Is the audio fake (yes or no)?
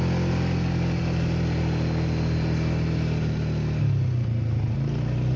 no